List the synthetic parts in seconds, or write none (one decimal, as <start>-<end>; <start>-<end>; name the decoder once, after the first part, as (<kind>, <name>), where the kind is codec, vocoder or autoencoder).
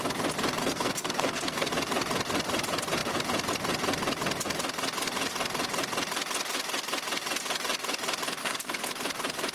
0.6-1.7 (codec, SNAC); 8.4-8.9